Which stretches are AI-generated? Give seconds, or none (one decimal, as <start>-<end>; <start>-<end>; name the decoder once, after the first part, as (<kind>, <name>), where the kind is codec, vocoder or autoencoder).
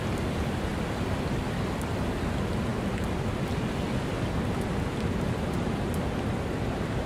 none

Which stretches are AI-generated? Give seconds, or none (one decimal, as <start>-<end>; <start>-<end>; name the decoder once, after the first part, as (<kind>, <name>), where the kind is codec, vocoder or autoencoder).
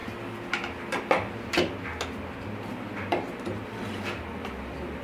none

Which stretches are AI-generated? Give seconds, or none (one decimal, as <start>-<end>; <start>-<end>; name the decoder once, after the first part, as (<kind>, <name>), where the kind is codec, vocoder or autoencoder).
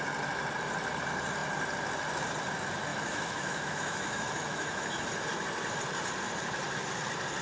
2.9-5.0 (autoencoder, DAC-VAE)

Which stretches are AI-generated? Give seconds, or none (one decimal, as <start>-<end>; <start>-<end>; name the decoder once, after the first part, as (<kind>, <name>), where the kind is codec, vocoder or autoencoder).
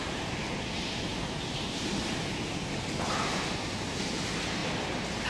none